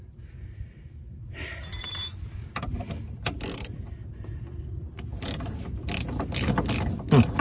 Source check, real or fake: real